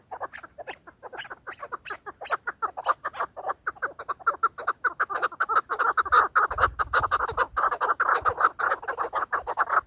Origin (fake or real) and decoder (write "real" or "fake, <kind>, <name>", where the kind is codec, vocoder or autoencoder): real